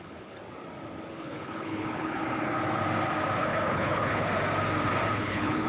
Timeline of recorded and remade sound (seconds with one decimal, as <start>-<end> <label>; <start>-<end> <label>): 0.0-0.4 remade; 0.4-1.2 recorded; 1.2-2.2 remade; 2.2-3.5 recorded; 3.5-4.3 remade; 4.3-5.1 recorded; 5.1-5.7 remade